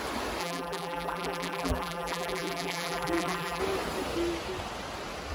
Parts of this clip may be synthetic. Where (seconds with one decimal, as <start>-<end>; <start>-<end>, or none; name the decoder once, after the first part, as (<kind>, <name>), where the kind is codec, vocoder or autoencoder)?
0.4-3.6 (vocoder, BigVGAN v2)